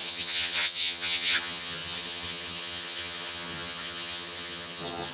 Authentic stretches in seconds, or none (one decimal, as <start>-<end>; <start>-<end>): none